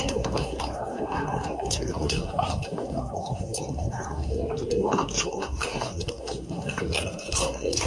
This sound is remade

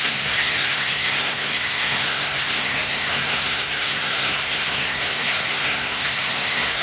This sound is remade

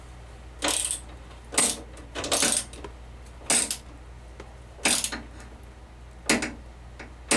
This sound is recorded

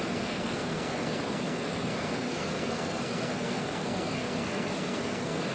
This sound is remade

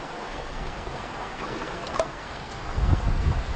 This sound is remade